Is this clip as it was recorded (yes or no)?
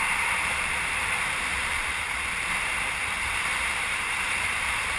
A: no